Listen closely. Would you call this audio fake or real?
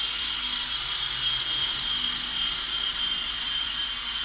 real